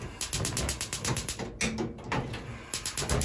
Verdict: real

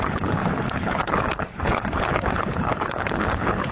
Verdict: fake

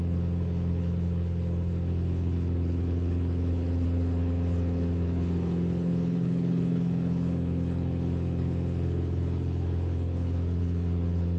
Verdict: fake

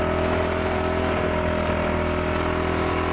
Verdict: real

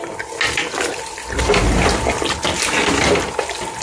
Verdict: real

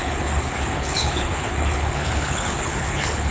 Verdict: fake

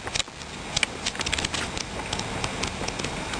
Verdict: real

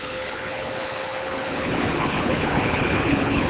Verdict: fake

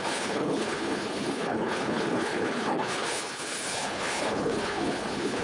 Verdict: fake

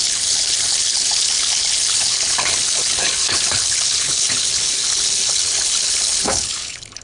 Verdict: fake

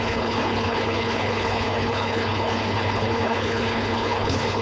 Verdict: fake